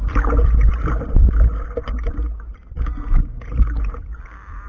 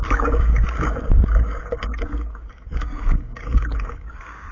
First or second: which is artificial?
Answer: second